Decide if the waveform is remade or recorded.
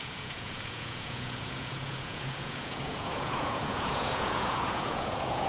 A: remade